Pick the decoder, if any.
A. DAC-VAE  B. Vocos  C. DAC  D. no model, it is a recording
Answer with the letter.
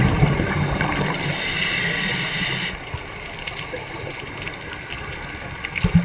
D